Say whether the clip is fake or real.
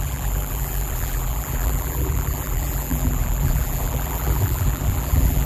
fake